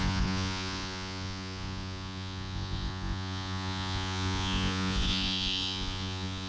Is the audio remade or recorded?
remade